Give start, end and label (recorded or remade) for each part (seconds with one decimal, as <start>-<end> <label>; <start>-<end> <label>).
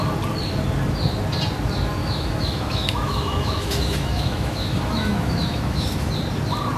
0.0-2.0 recorded; 2.0-6.1 remade; 6.1-6.8 recorded